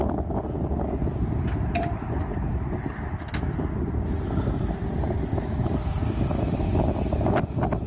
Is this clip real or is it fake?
real